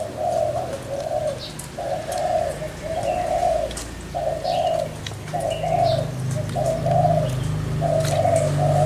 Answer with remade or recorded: recorded